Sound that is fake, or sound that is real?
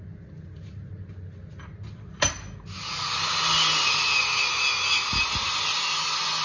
real